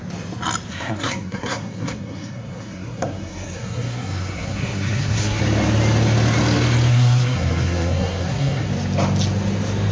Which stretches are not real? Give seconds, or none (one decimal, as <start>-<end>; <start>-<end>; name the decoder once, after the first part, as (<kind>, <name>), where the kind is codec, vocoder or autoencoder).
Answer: 0.7-5.4 (codec, SNAC); 6.9-8.7